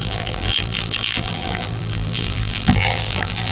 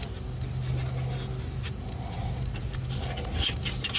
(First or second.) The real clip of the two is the second